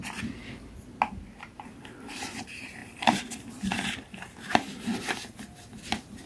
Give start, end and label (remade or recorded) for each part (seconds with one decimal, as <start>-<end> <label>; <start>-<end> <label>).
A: 0.0-1.4 recorded; 1.4-4.9 remade; 4.9-6.3 recorded

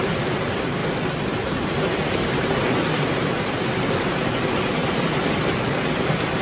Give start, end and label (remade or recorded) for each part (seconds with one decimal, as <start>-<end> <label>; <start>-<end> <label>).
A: 0.0-6.4 recorded

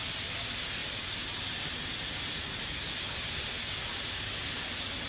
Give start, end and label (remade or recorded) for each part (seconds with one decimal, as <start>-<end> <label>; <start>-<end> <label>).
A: 0.0-5.1 recorded

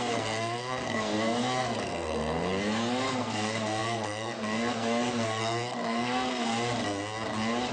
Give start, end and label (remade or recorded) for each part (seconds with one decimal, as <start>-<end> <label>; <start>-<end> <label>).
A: 0.0-6.5 remade; 6.5-7.7 recorded

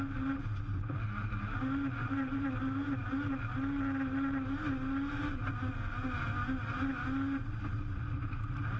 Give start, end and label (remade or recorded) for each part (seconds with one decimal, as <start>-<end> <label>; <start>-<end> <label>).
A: 0.0-2.0 recorded; 2.0-2.5 remade; 2.5-8.8 recorded

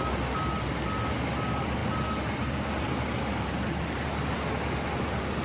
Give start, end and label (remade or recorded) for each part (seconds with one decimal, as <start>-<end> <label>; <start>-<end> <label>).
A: 0.0-5.4 recorded

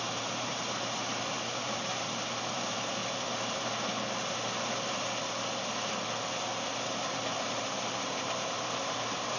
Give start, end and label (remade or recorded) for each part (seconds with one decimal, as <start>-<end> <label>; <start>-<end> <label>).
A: 0.0-1.9 remade; 1.9-2.5 recorded; 2.5-3.0 remade; 3.0-7.6 recorded; 7.6-9.4 remade

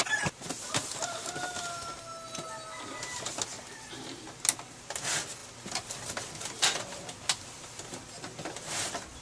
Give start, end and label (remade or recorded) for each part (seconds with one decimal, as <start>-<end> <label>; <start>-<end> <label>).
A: 0.0-9.2 recorded